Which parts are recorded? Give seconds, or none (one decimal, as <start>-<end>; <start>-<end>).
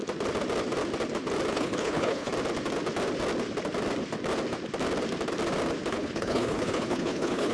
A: 0.0-1.5; 2.3-5.9